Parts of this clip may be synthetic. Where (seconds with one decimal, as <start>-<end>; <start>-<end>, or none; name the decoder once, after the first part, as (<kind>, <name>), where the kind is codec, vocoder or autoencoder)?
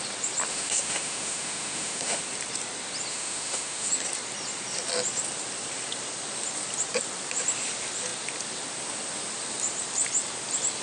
0.5-2.2 (autoencoder, DAC-VAE); 3.1-3.9